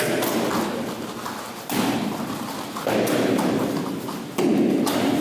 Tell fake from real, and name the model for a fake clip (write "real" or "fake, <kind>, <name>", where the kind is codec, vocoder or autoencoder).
real